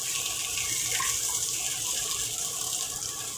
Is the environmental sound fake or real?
real